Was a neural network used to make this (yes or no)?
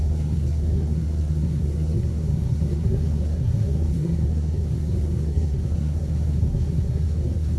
yes